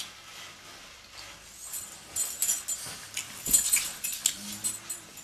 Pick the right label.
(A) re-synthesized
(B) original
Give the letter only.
B